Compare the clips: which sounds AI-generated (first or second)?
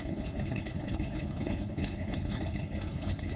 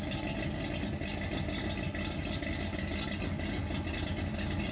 first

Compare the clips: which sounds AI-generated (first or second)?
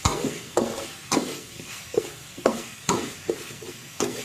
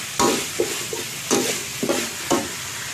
first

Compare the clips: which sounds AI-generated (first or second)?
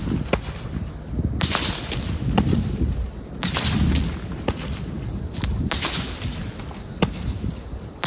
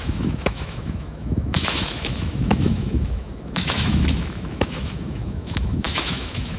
second